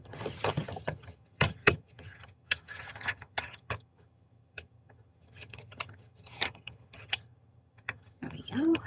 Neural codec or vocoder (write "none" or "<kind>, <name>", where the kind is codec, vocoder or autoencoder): vocoder, HiFi-GAN